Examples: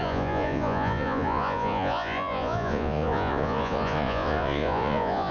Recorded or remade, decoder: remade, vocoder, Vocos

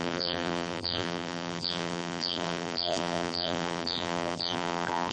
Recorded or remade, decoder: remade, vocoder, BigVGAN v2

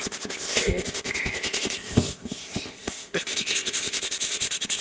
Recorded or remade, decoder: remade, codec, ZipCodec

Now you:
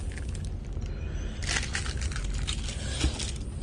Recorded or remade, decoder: recorded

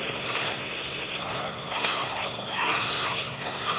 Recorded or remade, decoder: remade, codec, SNAC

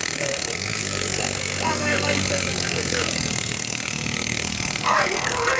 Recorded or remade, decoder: remade, codec, SNAC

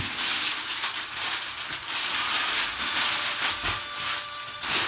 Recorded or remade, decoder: recorded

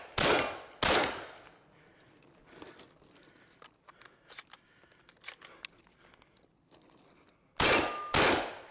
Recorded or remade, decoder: recorded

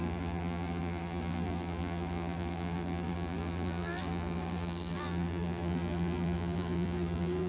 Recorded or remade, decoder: remade, vocoder, BigVGAN v2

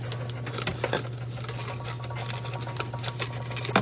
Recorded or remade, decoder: recorded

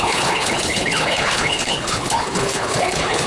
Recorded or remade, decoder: remade, codec, HILCodec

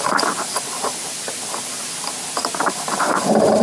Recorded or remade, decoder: recorded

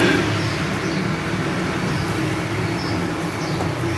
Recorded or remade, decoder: recorded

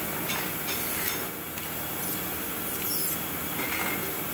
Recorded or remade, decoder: recorded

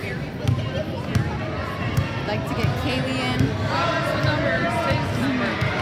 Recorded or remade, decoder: recorded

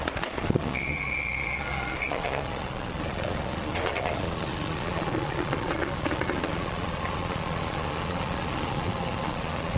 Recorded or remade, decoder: remade, vocoder, Vocos